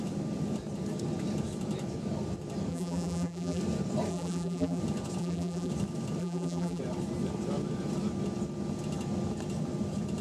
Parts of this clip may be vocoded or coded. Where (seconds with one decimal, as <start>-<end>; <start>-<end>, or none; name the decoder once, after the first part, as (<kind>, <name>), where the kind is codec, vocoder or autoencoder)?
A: 2.7-3.6 (vocoder, BigVGAN v2); 4.1-4.8; 5.2-5.7; 6.2-6.8